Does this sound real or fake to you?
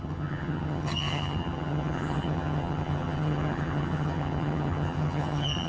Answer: fake